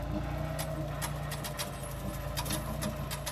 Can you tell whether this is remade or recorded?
recorded